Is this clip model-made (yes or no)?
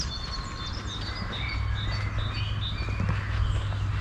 no